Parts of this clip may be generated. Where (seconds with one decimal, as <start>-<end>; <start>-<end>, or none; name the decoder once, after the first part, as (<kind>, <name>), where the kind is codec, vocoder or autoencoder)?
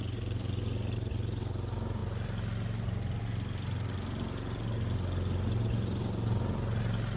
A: none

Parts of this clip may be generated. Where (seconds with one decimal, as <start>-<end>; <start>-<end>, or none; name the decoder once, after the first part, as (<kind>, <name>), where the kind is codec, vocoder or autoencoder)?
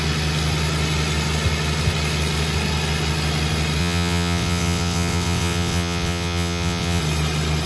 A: 3.8-7.0 (vocoder, WaveNeXt)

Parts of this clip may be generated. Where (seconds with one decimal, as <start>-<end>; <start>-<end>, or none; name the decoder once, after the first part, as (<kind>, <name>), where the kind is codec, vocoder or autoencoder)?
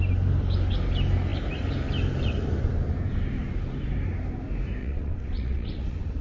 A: 4.8-6.2 (vocoder, WaveNeXt)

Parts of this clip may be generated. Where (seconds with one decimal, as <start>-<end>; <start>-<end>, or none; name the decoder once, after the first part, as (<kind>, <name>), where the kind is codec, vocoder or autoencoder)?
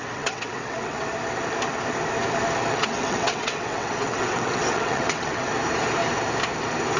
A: 0.0-1.1 (vocoder, WaveNeXt); 2.7-5.5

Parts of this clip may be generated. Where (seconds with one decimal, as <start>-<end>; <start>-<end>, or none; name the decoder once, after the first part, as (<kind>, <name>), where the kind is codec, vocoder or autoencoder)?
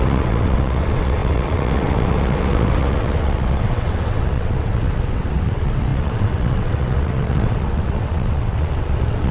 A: 0.0-9.3 (vocoder, WaveNeXt)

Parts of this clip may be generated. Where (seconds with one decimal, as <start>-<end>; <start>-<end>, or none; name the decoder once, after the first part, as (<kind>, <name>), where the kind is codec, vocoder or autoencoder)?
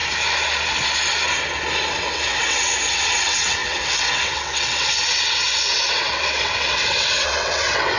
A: 2.0-8.0 (vocoder, WaveNeXt)